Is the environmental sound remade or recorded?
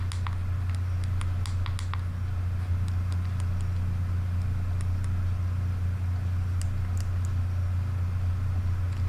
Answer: recorded